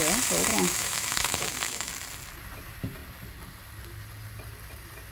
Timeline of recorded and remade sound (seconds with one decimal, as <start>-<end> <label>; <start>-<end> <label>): 0.0-0.5 recorded; 0.5-1.9 remade; 1.9-5.1 recorded